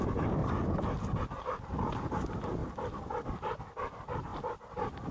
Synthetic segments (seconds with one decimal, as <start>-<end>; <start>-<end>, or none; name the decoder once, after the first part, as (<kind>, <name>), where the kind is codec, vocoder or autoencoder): 0.0-0.4 (vocoder, BigVGAN v2); 1.2-2.6; 3.9-4.3